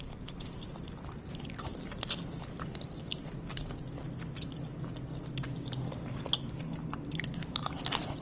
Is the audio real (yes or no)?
yes